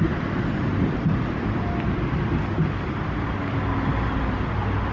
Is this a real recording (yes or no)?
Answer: yes